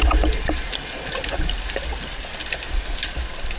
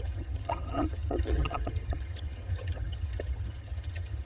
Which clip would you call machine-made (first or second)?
second